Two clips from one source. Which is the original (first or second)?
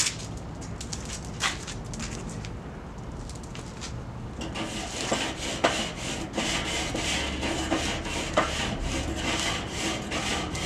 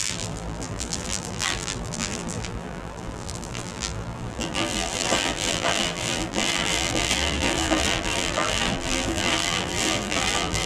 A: first